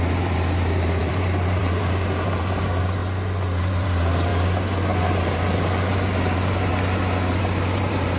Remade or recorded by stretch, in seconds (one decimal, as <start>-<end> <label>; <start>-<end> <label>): 0.0-3.0 remade; 3.0-3.6 recorded; 3.6-4.3 remade; 4.3-5.0 recorded; 5.0-6.7 remade; 6.7-7.4 recorded; 7.4-8.2 remade